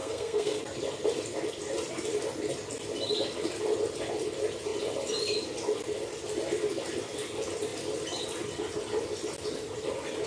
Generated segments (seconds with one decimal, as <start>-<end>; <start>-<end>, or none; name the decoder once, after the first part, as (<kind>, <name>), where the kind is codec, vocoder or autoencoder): 0.0-0.6 (codec, SNAC)